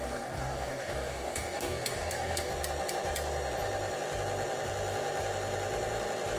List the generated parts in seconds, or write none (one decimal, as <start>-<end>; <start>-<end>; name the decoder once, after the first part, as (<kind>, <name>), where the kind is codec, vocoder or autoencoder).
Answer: 0.0-2.5 (codec, DAC)